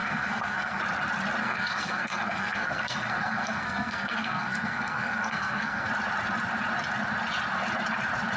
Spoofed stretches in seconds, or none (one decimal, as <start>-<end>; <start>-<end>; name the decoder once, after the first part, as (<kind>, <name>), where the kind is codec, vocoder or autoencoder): 0.0-0.8 (codec, SNAC); 1.4-5.9